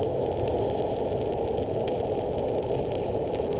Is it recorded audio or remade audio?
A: recorded